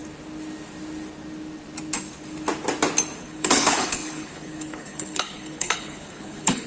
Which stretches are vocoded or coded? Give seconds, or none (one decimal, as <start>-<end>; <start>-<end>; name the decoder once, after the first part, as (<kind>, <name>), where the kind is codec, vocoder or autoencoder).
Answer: 3.2-6.7 (codec, HILCodec)